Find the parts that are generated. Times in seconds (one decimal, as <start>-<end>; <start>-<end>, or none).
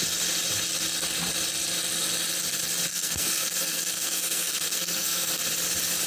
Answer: 2.9-5.4